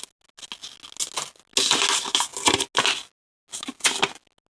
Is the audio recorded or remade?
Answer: recorded